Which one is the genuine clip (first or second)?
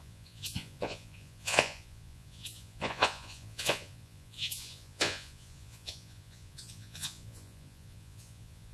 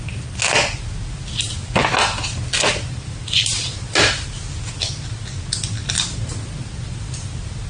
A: second